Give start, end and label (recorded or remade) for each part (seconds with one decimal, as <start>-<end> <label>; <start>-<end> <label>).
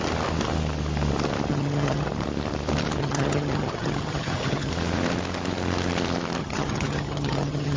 0.0-1.5 recorded; 1.5-2.1 remade; 2.1-3.0 recorded; 3.0-4.7 remade; 4.7-6.4 recorded; 6.4-7.8 remade